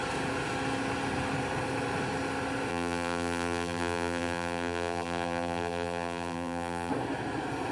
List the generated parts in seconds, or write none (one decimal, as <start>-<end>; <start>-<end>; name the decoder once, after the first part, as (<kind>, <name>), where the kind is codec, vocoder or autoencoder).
2.7-6.9 (vocoder, BigVGAN v2)